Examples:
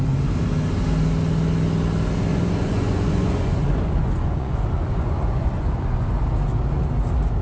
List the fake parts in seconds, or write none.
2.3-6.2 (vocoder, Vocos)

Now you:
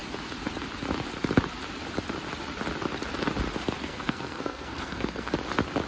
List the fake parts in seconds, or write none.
3.8-5.3 (codec, SNAC)

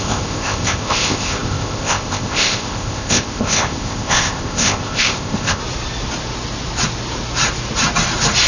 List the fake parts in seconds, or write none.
0.0-5.6 (codec, ZipCodec)

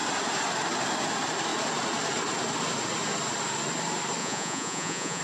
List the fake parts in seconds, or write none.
4.2-5.2 (vocoder, Vocos)

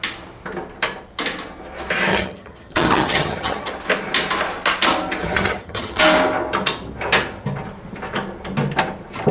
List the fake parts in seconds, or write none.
2.1-3.7 (vocoder, HiFi-GAN); 5.2-6.0

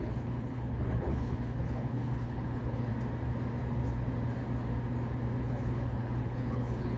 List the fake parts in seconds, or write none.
0.0-2.9 (codec, HILCodec); 5.4-7.0